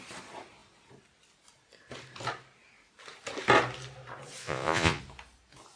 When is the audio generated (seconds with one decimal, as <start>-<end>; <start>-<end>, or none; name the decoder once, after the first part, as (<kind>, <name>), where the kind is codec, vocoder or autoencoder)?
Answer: 4.4-5.0 (vocoder, Vocos)